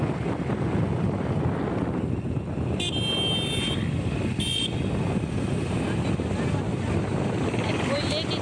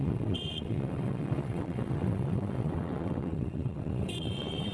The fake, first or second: second